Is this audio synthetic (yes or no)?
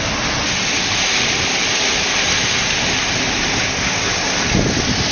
no